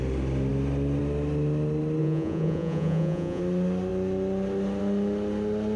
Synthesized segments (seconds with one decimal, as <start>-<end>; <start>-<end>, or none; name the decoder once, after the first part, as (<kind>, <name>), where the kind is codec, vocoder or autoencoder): 2.0-3.4 (vocoder, Vocos)